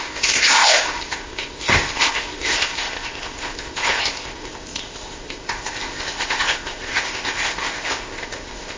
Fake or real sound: fake